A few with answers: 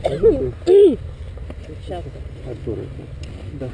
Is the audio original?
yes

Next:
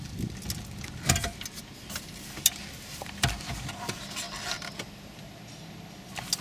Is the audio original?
yes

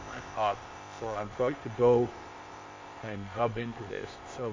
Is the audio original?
no